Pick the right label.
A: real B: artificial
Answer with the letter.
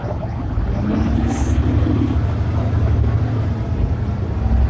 A